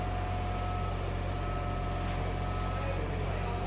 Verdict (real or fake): real